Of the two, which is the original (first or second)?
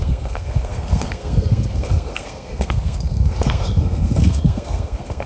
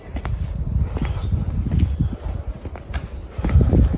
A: second